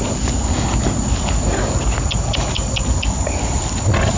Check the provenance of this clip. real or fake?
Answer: real